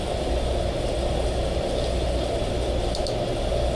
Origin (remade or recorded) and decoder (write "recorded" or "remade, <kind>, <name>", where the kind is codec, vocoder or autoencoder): recorded